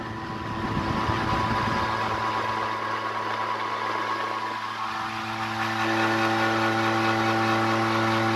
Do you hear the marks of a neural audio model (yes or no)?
no